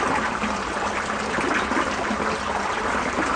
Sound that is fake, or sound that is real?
real